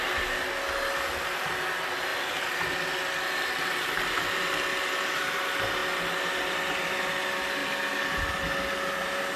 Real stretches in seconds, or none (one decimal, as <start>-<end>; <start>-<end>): 0.0-9.4